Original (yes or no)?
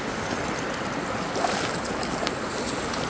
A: yes